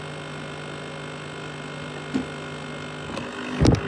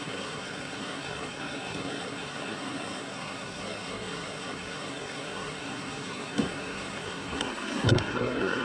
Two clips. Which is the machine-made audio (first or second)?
second